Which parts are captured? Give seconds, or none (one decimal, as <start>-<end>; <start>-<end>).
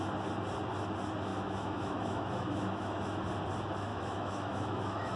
0.0-1.3; 3.2-3.9